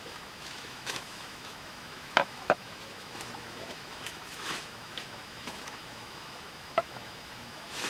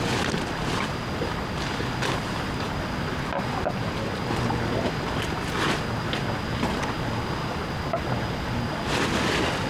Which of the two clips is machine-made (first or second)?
first